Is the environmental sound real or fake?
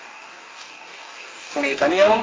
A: fake